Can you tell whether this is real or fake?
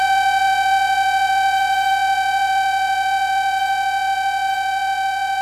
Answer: fake